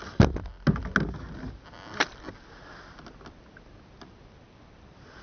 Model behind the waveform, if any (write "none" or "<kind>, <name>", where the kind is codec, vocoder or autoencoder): none